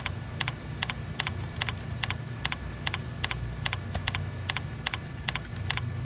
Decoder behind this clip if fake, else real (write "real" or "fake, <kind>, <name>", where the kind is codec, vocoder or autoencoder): real